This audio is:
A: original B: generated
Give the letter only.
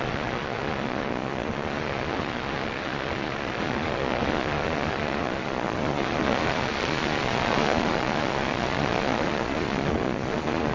B